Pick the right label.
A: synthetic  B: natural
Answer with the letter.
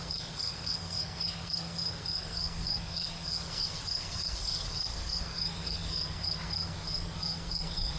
A